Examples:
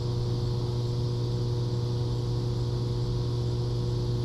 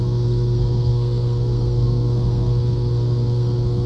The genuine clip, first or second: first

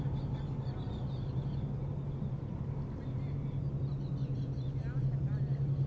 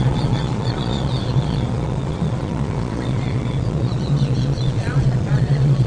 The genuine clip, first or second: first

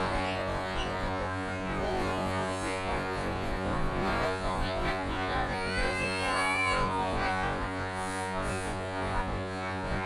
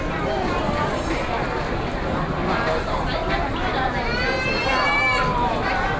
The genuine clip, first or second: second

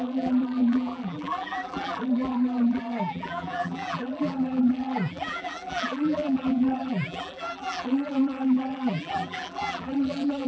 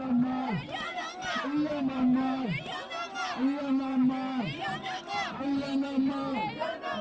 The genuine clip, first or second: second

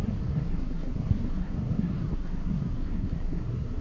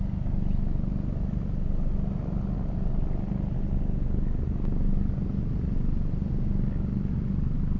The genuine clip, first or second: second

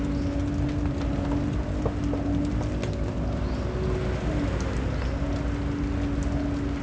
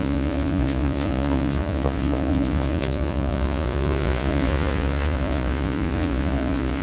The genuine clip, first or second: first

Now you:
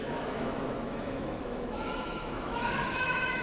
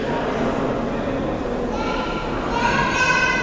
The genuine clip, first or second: second